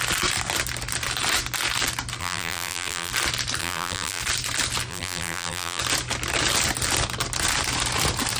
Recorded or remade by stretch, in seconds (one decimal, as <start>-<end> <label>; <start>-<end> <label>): 0.0-2.2 recorded; 2.2-3.1 remade; 3.1-3.6 recorded; 3.6-4.2 remade; 4.2-4.9 recorded; 4.9-5.8 remade; 5.8-8.4 recorded